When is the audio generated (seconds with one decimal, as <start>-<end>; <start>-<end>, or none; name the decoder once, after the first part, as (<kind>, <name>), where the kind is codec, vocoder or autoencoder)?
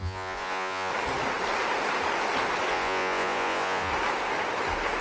0.0-0.9 (vocoder, Vocos); 2.7-3.9